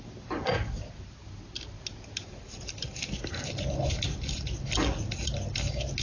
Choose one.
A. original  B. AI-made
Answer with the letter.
A